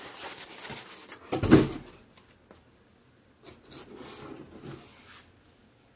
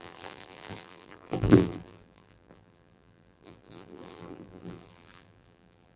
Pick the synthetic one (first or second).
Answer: second